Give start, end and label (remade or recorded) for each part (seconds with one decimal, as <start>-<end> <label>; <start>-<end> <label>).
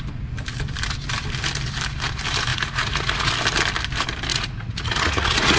0.0-2.5 recorded; 2.5-3.3 remade; 3.3-4.3 recorded; 4.3-5.6 remade